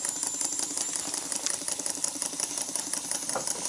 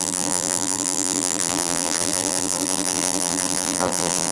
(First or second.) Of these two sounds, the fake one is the second